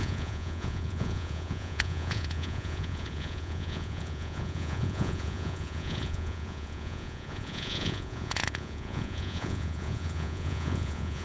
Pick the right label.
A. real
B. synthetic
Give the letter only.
B